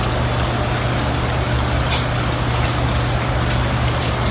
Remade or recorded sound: recorded